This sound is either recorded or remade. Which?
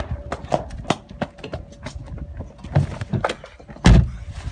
recorded